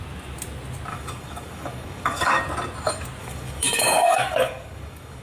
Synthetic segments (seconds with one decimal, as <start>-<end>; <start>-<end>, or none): 0.9-2.4; 3.2-5.2